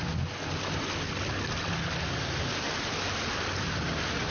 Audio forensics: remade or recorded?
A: recorded